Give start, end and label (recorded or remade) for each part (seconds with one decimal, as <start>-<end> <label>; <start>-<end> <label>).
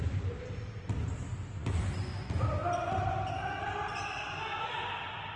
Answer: 0.0-5.4 recorded